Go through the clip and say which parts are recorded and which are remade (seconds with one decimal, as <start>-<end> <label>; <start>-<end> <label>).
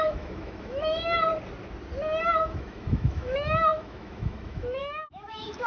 0.0-1.3 remade; 1.3-2.2 recorded; 2.2-5.7 remade